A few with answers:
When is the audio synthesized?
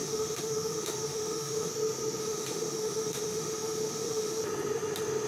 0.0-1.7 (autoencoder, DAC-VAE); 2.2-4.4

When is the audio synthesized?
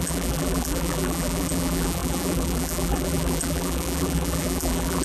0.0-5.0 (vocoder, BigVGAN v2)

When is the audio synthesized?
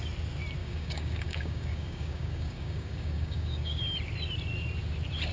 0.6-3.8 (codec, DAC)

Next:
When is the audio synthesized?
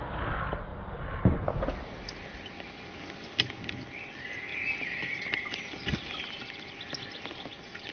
0.0-0.7 (vocoder, BigVGAN v2); 4.1-7.9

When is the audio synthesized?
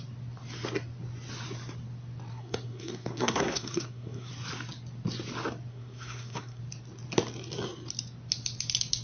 2.3-4.3 (codec, SNAC); 5.7-6.6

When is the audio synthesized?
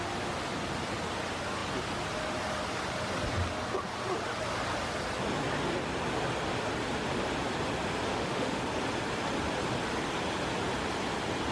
8.1-8.6 (autoencoder, DAC-VAE)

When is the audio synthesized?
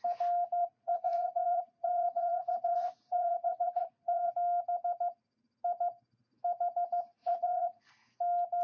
0.6-4.3 (vocoder, Vocos); 7.2-7.9